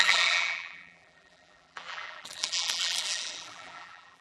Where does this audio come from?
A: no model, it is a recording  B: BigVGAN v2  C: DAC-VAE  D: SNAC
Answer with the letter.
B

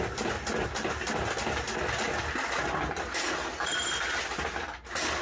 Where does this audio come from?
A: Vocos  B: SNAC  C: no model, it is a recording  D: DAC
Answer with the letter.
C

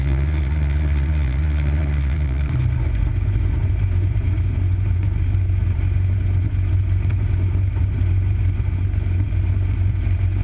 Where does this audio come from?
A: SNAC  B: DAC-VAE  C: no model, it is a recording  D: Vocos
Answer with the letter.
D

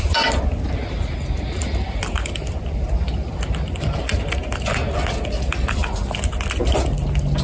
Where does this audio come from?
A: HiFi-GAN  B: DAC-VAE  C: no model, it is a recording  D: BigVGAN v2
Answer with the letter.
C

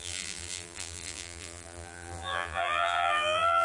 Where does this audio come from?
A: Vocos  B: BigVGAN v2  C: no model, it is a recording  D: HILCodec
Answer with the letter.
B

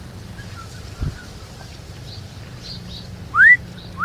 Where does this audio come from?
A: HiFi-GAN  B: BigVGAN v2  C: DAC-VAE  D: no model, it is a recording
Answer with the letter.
B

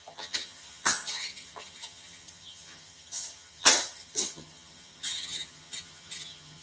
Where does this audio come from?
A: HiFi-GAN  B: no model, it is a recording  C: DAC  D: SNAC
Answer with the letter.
A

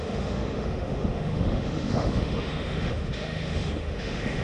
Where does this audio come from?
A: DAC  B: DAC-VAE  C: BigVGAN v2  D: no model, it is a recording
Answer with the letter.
B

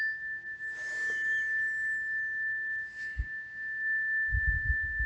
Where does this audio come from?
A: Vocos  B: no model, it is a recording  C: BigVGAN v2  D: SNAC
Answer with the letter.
B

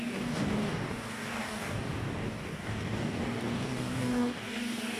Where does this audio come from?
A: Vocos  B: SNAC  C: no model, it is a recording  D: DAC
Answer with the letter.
D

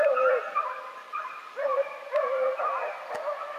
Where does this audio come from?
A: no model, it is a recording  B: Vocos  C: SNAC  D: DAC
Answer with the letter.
A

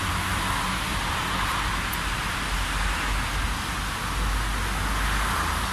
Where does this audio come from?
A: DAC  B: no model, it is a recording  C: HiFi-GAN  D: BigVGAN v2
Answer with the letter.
B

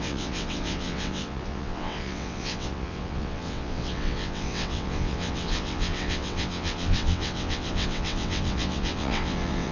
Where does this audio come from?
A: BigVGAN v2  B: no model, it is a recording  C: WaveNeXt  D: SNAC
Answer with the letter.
C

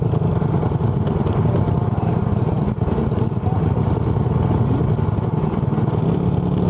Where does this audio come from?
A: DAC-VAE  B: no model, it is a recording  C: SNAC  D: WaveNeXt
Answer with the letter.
B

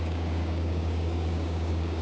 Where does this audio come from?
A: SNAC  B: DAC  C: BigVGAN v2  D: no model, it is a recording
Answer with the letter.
B